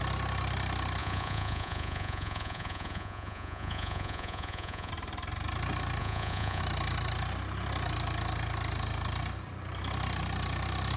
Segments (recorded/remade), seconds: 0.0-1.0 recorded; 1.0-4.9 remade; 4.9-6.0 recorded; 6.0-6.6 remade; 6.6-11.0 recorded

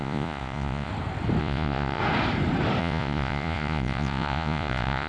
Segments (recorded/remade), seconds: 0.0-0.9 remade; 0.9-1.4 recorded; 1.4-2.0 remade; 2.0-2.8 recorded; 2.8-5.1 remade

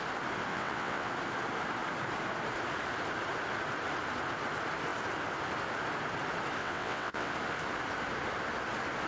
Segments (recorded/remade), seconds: 0.0-0.5 recorded; 0.5-1.1 remade; 1.1-6.6 recorded; 6.6-7.3 remade; 7.3-9.1 recorded

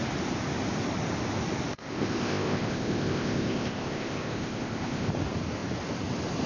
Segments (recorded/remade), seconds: 0.0-1.7 recorded; 1.7-5.1 remade; 5.1-6.5 recorded